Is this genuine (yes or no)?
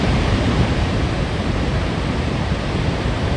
no